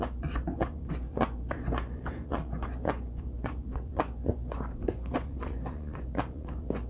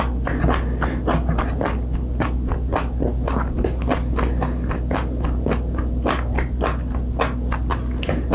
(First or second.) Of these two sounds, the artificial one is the first